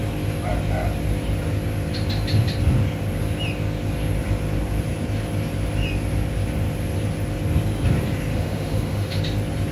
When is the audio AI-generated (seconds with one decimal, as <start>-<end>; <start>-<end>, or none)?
8.3-9.2